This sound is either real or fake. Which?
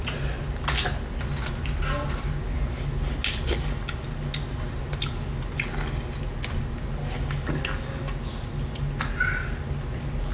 real